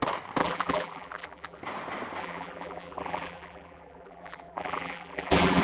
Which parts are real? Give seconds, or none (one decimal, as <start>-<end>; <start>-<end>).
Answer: 0.0-0.4; 1.6-2.2